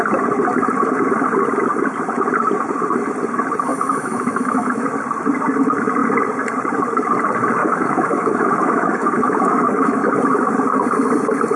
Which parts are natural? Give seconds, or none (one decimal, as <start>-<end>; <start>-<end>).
0.0-3.7; 4.9-7.6; 10.1-11.6